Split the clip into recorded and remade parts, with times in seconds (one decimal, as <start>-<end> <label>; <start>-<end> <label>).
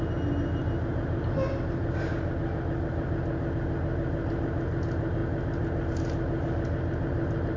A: 0.0-7.6 recorded